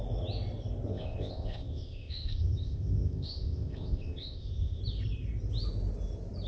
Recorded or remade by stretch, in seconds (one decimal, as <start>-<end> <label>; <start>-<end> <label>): 0.0-0.9 recorded; 0.9-4.8 remade; 4.8-6.5 recorded